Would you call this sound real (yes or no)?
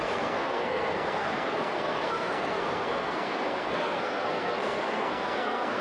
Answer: no